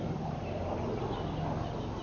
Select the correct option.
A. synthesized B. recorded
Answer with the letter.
B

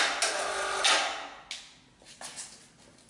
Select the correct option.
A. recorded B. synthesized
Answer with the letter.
A